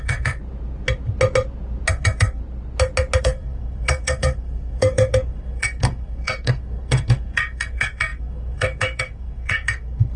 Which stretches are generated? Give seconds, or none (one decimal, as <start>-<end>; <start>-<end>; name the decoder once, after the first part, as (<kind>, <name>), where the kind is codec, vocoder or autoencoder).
0.0-0.4 (codec, SNAC); 1.9-2.4; 3.2-10.2